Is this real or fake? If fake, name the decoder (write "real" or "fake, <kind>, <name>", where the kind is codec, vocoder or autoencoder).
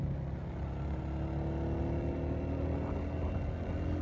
real